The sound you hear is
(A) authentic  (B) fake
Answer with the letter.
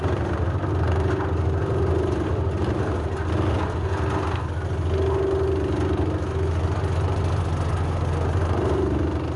A